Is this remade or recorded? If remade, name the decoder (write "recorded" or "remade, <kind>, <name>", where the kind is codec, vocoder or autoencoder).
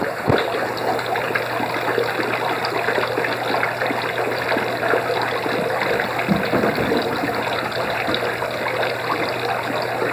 recorded